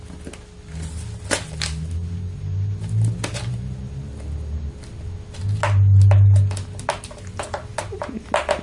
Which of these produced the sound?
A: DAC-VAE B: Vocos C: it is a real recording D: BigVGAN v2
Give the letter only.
C